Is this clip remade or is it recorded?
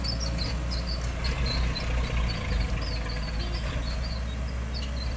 recorded